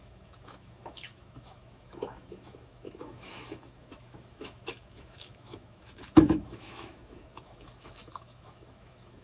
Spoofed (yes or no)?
yes